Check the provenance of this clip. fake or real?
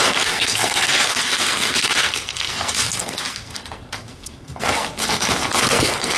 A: fake